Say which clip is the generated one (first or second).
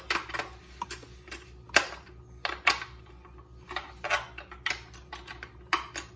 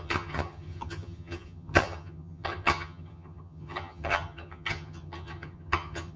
second